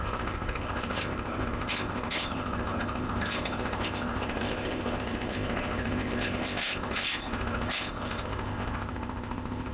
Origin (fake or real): fake